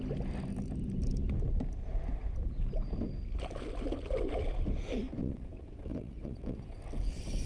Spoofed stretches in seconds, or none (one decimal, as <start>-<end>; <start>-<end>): 5.2-6.8